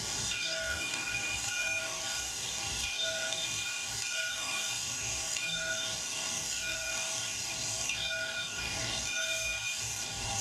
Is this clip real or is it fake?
fake